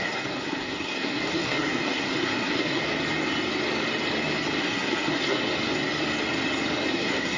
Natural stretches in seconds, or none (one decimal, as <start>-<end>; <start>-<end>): 2.8-4.6; 5.4-6.9